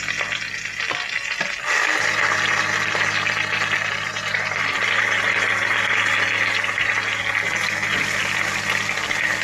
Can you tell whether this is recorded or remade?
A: recorded